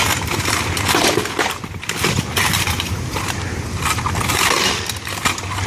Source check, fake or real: real